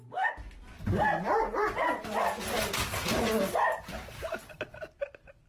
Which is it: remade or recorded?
recorded